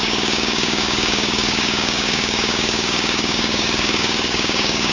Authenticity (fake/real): fake